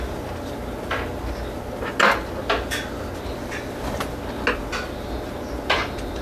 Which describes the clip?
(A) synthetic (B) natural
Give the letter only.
B